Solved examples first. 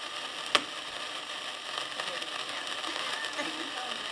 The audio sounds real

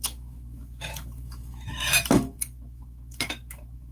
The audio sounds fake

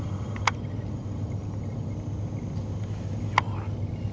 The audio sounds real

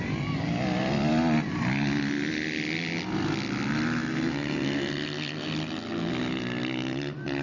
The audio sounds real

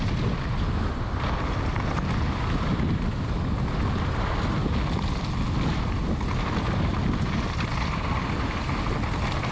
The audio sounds real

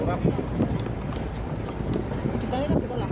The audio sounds fake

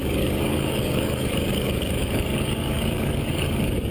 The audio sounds fake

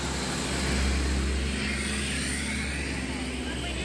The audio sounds real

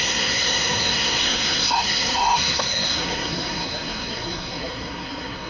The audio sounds fake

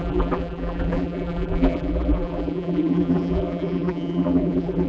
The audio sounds fake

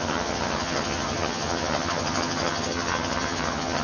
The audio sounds fake